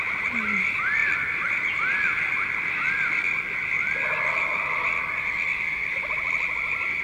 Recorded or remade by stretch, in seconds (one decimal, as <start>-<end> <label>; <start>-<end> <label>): 0.0-7.0 recorded